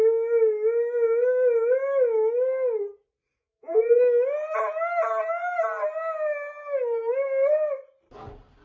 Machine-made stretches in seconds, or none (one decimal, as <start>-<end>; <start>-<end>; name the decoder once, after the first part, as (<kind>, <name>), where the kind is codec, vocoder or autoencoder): 3.4-4.0 (vocoder, Vocos)